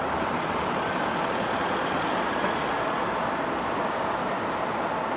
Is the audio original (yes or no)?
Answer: yes